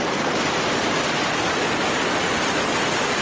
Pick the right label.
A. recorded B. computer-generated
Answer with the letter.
A